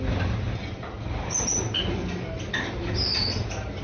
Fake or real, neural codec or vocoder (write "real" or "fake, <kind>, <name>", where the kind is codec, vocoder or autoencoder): real